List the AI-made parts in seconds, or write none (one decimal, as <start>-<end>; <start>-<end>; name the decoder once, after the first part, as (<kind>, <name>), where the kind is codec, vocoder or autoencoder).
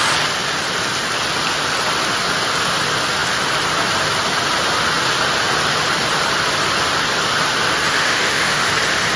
7.9-8.7 (autoencoder, DAC-VAE)